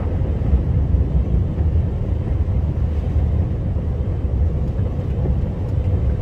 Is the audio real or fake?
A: real